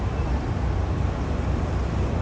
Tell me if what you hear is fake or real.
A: real